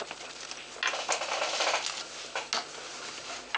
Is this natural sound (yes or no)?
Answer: yes